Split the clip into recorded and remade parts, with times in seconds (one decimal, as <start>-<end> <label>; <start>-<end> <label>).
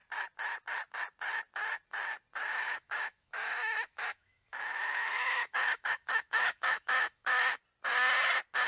0.0-2.4 recorded; 2.4-7.6 remade; 7.6-8.7 recorded